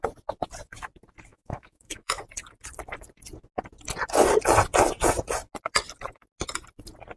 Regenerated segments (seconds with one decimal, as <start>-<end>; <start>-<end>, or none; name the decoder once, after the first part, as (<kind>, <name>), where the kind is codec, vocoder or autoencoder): 1.3-2.2 (autoencoder, DAC-VAE)